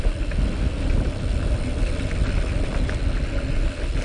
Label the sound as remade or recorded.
recorded